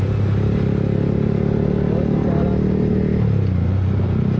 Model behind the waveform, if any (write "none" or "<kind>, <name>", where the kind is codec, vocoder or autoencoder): none